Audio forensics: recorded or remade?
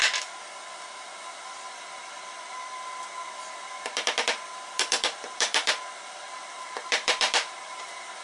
remade